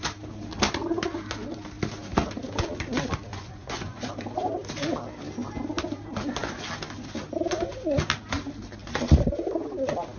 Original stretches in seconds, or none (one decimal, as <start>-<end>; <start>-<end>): 0.0-3.3; 4.1-10.2